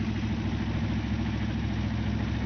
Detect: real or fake real